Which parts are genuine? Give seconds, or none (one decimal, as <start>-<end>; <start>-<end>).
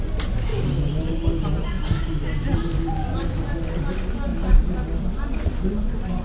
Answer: 0.0-6.2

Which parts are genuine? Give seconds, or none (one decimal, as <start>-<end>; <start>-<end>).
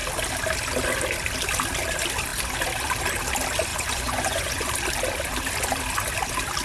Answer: 0.0-3.7; 4.7-6.6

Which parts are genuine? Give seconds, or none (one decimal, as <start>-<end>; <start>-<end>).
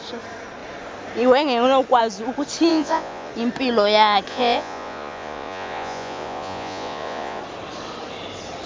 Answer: 0.0-2.7; 3.3-4.3; 7.4-8.7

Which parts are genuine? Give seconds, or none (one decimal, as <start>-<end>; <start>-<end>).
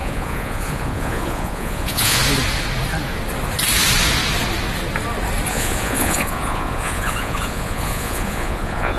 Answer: 2.2-5.5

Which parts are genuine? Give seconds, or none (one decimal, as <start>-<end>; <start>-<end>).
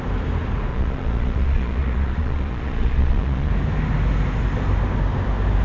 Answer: 0.0-0.7; 3.5-5.6